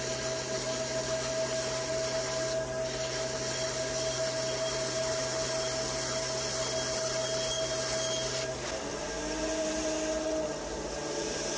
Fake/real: real